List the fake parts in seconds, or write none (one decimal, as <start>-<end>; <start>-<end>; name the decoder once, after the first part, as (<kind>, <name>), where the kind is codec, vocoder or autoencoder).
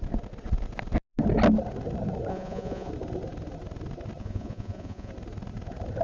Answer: 2.3-2.9 (vocoder, Vocos); 4.2-5.1